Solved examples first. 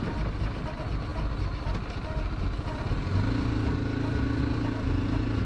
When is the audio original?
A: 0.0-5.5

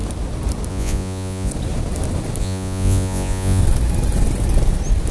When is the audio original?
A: 0.0-0.7; 1.5-2.4; 3.6-5.1

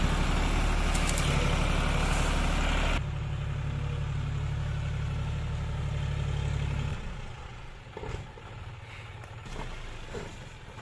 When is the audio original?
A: 0.0-6.9; 7.8-10.8

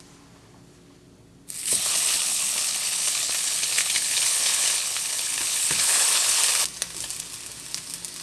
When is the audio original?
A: 0.0-1.6; 6.4-8.2

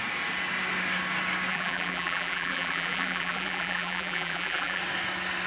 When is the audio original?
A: 0.0-1.5; 4.8-5.5

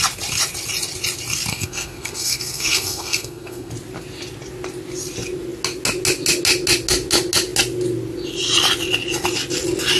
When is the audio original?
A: 0.0-1.5; 3.7-10.0

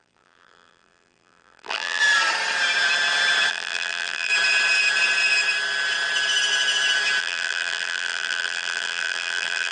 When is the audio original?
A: 2.0-3.5; 4.3-7.2

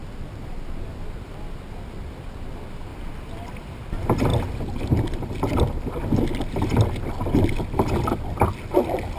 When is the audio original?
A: 0.0-2.9; 3.5-4.3; 5.9-9.2